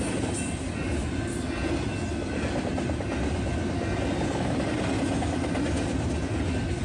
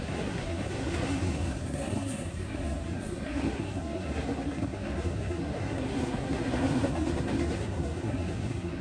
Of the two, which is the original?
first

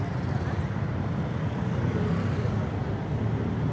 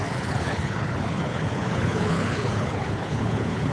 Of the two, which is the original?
first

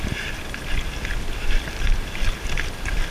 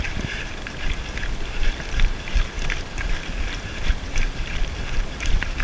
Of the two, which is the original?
first